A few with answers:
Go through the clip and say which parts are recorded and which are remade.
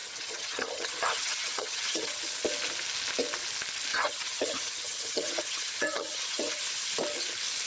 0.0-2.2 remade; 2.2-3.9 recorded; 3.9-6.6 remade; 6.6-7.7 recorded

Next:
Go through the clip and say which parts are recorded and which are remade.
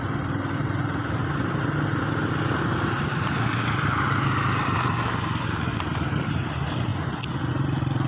0.0-8.1 recorded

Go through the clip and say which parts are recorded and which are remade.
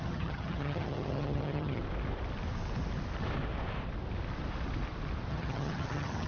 0.0-1.8 remade; 1.8-5.3 recorded; 5.3-6.3 remade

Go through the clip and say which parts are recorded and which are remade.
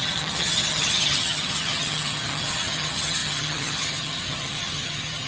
0.0-5.3 remade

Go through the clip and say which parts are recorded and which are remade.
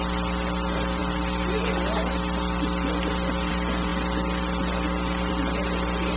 0.0-6.2 recorded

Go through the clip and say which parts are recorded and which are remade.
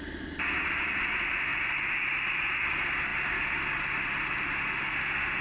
0.0-5.4 recorded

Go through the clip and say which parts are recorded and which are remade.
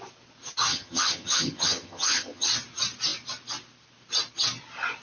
0.0-0.7 recorded; 0.7-2.5 remade; 2.5-5.0 recorded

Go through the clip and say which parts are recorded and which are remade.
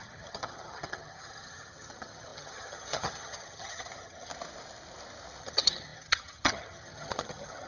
0.0-4.3 remade; 4.3-5.4 recorded; 5.4-7.7 remade